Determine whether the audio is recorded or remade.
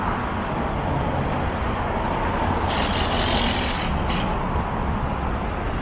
recorded